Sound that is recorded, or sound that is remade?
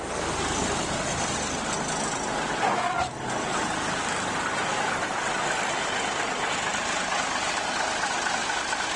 recorded